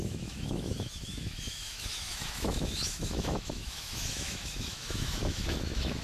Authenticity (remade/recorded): remade